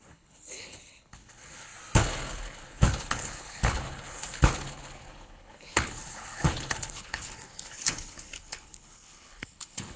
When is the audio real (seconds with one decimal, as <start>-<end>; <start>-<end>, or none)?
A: 1.7-2.3